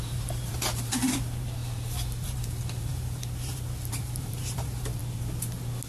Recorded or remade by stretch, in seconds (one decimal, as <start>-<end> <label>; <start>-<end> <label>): 0.0-5.0 remade; 5.0-5.9 recorded